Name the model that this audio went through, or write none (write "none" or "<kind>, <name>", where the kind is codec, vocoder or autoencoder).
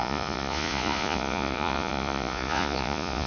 vocoder, Vocos